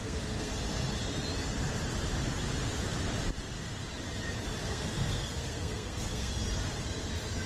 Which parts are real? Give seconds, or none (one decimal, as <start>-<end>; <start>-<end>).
0.5-4.6; 6.3-7.5